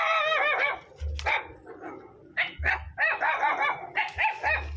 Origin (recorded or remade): recorded